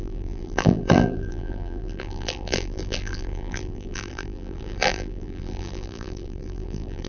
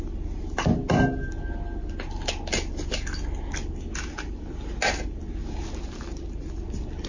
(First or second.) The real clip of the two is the second